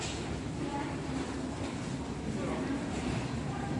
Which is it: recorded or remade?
recorded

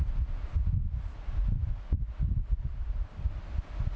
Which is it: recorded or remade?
recorded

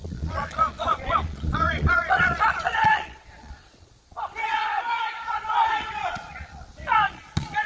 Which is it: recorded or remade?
remade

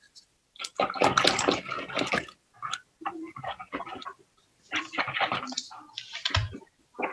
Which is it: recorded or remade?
recorded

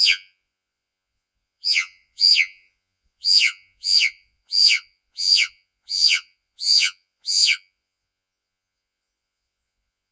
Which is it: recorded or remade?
remade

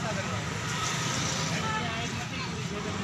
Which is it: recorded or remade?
recorded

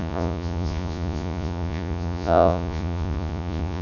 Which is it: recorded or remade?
remade